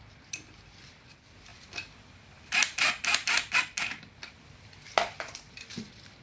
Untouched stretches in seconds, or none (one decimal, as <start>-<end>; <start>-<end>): none